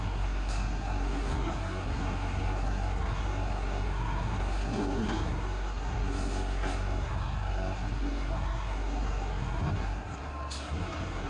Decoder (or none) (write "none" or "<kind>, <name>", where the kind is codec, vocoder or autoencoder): codec, SNAC